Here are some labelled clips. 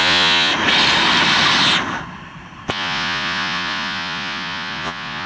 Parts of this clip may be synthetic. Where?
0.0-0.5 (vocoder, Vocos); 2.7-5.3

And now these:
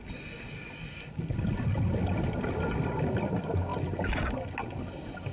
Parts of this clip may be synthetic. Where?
none

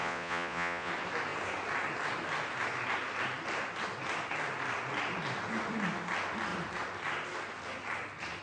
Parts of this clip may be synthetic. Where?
0.0-0.9 (vocoder, Vocos)

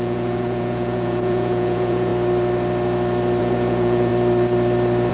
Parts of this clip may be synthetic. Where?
0.0-2.1 (vocoder, Vocos); 3.4-4.1

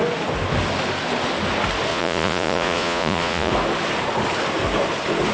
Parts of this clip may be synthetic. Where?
1.9-3.5 (vocoder, Vocos)

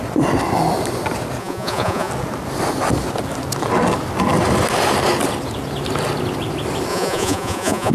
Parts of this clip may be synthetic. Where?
1.4-2.1 (vocoder, Vocos); 6.9-7.9

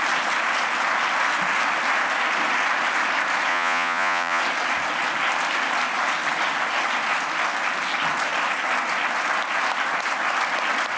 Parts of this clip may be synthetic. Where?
3.5-4.4 (vocoder, Vocos)